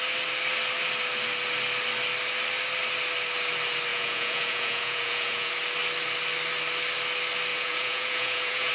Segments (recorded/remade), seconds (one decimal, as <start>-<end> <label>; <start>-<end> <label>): 0.0-3.9 recorded; 3.9-5.5 remade; 5.5-7.5 recorded; 7.5-8.7 remade